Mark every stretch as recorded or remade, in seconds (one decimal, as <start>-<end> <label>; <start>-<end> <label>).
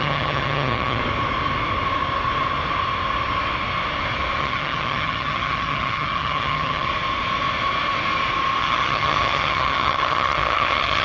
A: 0.0-1.0 remade; 1.0-4.4 recorded; 4.4-6.9 remade; 6.9-8.6 recorded; 8.6-11.0 remade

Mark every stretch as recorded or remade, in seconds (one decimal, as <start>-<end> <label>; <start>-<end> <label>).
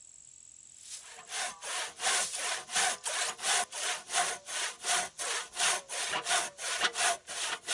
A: 0.0-7.7 recorded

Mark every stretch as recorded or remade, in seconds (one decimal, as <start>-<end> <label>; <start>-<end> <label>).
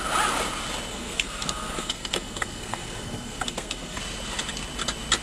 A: 0.0-0.9 recorded; 0.9-4.0 remade; 4.0-5.2 recorded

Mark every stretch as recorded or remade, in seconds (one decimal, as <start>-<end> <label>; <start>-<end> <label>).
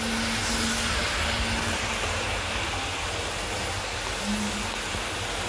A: 0.0-5.5 recorded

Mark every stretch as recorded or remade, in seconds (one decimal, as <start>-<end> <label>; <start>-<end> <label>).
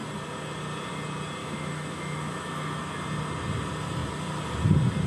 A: 0.0-1.4 recorded; 1.4-2.8 remade; 2.8-5.1 recorded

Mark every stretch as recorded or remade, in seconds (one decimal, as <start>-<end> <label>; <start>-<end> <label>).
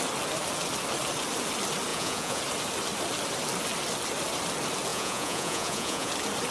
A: 0.0-1.9 recorded; 1.9-2.4 remade; 2.4-4.9 recorded; 4.9-6.1 remade; 6.1-6.5 recorded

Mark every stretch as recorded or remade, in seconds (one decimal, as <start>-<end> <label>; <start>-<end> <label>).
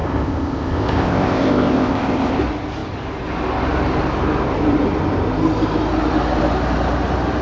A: 0.0-2.4 remade; 2.4-7.4 recorded